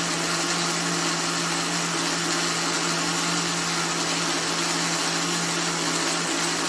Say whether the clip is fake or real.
real